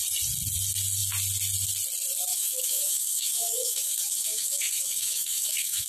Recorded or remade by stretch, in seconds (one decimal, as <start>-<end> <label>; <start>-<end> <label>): 0.0-2.3 recorded; 2.3-5.9 remade